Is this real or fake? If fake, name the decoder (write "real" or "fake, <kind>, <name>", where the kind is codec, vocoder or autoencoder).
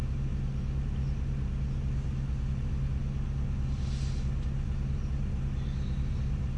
real